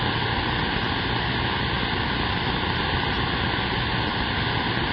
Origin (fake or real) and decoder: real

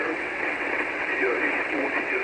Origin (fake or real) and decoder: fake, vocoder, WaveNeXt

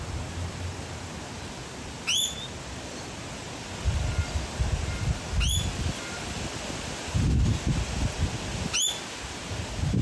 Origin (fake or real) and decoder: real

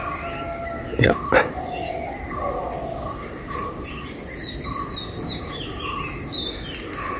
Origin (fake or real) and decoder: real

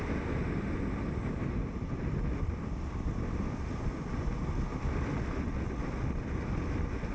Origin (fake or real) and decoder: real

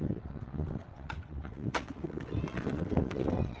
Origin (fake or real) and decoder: fake, vocoder, WaveNeXt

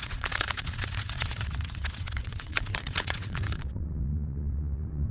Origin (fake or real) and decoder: fake, vocoder, WaveNeXt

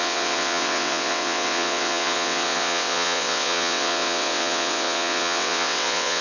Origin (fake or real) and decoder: fake, vocoder, WaveNeXt